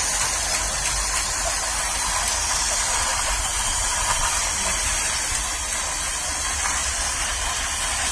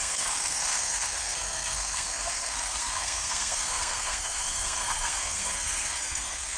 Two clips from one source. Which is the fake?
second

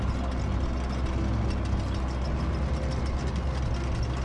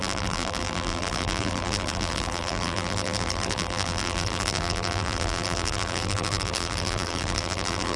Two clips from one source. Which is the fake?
second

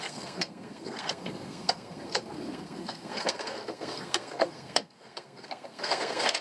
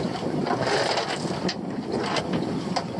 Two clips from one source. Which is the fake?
first